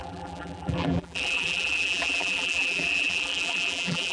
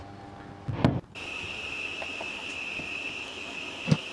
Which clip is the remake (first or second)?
first